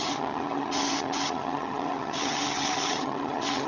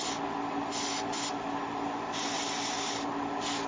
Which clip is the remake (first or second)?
first